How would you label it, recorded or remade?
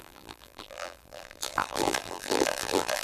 remade